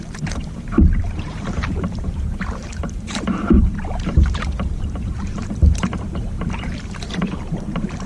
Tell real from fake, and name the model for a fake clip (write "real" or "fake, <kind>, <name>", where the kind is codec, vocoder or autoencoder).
fake, vocoder, BigVGAN v2